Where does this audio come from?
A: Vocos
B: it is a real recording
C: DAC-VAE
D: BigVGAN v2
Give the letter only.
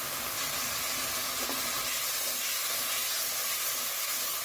B